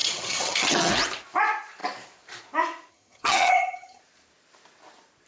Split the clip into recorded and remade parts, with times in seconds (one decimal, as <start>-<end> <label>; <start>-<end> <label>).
0.0-0.9 remade; 0.9-2.9 recorded; 2.9-4.0 remade; 4.0-5.3 recorded